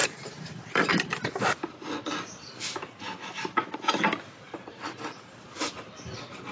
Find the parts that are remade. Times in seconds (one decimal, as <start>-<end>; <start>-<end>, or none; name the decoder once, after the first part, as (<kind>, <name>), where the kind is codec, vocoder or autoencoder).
0.0-0.9 (vocoder, BigVGAN v2)